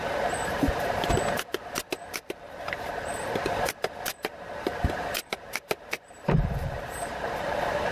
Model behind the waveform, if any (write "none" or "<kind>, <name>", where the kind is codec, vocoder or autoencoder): vocoder, BigVGAN v2